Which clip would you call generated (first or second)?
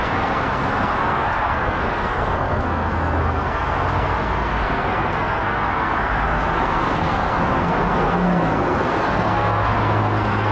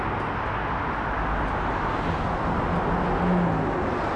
first